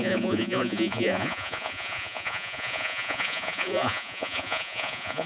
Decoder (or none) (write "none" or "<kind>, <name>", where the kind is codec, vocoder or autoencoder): vocoder, Vocos